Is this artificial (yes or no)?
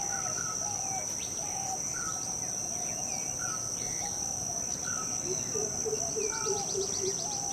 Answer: no